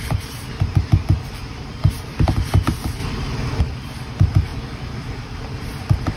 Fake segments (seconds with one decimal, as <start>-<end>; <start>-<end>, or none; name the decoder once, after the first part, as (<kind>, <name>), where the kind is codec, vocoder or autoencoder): 0.0-6.2 (vocoder, BigVGAN v2)